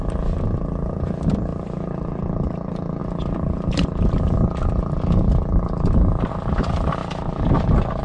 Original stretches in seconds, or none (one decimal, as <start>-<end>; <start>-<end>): 0.0-1.5; 2.4-7.0